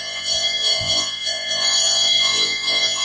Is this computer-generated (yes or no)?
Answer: yes